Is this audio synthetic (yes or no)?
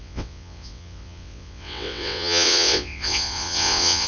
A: yes